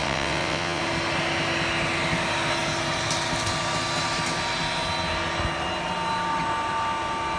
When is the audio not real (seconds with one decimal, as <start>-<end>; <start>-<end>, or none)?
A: 0.0-0.8